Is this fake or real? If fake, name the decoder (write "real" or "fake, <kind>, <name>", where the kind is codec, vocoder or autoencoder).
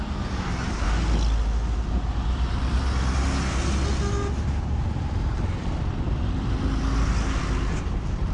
real